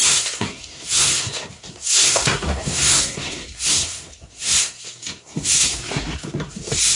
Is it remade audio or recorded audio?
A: remade